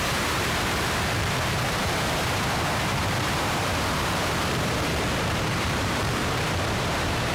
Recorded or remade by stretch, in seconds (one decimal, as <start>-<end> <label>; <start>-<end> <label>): 0.0-7.3 remade